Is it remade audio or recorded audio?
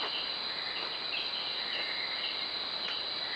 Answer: recorded